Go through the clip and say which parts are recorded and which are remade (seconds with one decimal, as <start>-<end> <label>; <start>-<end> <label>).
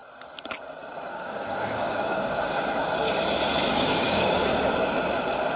0.0-1.1 recorded; 1.1-2.5 remade; 2.5-3.7 recorded; 3.7-4.3 remade; 4.3-5.6 recorded